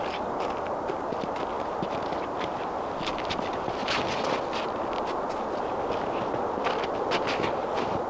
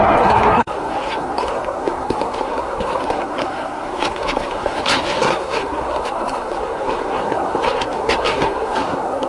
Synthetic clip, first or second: second